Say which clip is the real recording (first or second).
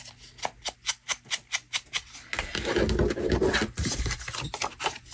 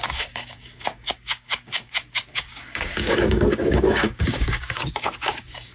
first